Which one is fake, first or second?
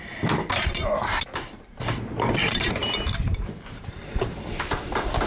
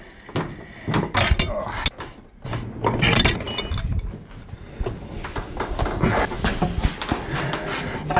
first